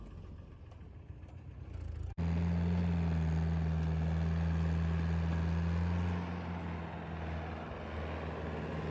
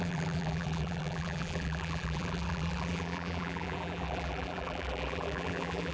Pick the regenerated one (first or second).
second